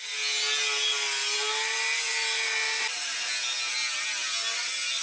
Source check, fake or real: real